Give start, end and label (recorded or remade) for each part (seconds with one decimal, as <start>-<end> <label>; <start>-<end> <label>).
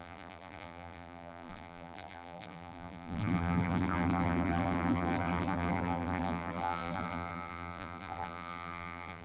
0.0-9.2 remade